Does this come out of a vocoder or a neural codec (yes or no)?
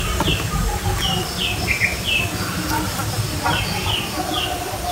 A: no